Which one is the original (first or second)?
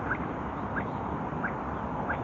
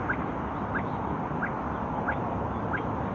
second